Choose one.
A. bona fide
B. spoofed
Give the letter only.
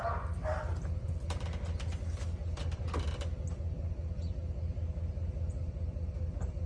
A